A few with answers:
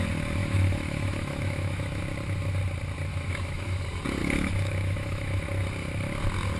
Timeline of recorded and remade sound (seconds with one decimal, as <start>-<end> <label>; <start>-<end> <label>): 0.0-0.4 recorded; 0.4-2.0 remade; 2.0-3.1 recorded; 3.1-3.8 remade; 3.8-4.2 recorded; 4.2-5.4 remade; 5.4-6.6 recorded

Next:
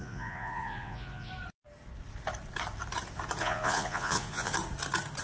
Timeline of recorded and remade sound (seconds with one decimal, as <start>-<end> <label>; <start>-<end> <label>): 0.0-1.3 remade; 1.3-3.4 recorded; 3.4-4.5 remade; 4.5-5.2 recorded

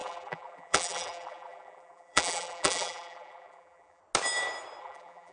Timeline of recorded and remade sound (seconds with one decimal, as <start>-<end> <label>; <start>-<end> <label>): 0.0-4.0 remade; 4.0-4.8 recorded; 4.8-5.3 remade

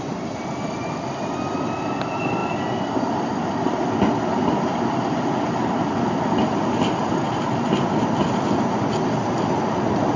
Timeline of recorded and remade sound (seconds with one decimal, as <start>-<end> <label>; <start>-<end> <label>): 0.0-10.2 recorded

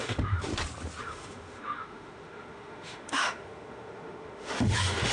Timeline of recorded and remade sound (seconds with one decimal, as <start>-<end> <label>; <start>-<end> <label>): 0.0-0.5 remade; 0.5-1.0 recorded; 1.0-5.1 remade

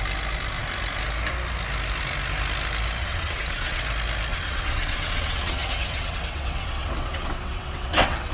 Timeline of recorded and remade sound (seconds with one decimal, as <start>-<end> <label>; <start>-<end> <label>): 0.0-3.0 recorded; 3.0-3.8 remade; 3.8-4.3 recorded; 4.3-8.3 remade